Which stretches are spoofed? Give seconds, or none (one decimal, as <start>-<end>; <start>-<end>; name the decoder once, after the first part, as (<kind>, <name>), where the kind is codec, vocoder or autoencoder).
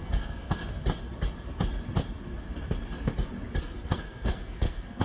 0.0-0.6 (codec, SNAC); 3.6-5.0